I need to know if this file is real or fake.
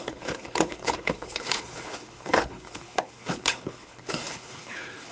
fake